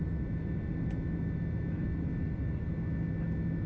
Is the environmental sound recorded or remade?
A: recorded